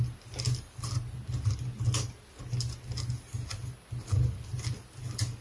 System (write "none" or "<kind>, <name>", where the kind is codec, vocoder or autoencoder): none